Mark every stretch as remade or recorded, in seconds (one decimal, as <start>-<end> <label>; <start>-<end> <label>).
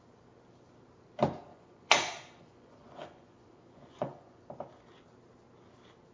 0.0-1.5 recorded; 1.5-4.4 remade; 4.4-6.1 recorded